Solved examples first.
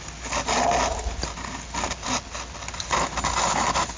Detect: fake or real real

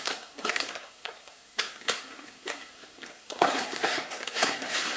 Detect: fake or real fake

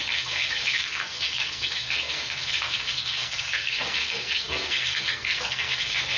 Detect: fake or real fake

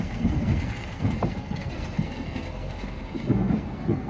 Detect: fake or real fake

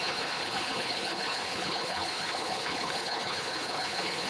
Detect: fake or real fake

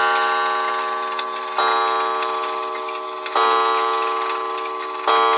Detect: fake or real real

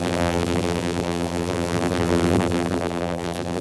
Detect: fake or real fake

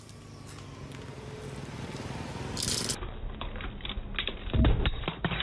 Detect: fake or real real